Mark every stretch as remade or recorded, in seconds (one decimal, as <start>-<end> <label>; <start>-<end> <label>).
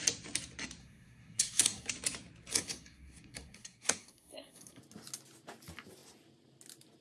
0.0-0.8 recorded; 0.8-1.9 remade; 1.9-2.5 recorded; 2.5-4.8 remade; 4.8-7.0 recorded